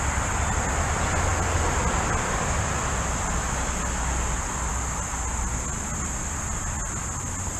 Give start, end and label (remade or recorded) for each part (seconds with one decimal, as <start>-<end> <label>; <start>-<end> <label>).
0.0-7.6 recorded